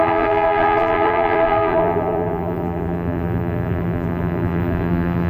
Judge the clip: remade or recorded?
remade